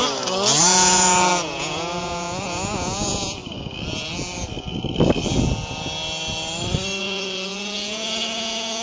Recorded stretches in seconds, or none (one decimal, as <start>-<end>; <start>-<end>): 0.0-0.6; 3.4-7.0